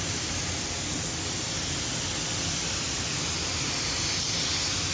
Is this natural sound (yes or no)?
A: yes